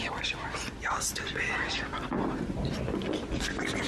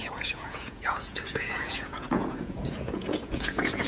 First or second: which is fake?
second